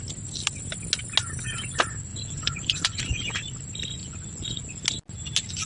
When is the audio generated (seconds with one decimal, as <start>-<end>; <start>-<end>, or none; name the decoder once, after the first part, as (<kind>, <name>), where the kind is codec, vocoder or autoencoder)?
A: 2.1-3.3 (vocoder, Vocos); 4.0-4.7